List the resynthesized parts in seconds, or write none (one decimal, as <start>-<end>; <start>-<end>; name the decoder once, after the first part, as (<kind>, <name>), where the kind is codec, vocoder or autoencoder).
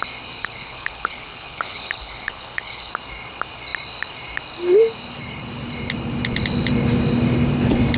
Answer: 0.4-2.9 (codec, HILCodec)